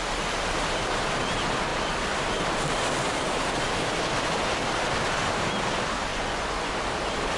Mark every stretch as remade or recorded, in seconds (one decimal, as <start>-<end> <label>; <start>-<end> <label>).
0.0-6.1 recorded; 6.1-6.7 remade; 6.7-7.4 recorded